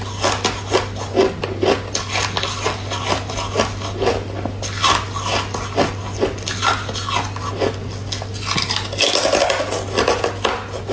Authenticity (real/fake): real